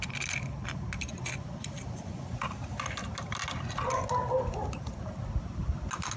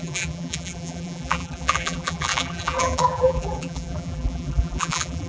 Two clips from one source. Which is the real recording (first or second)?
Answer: first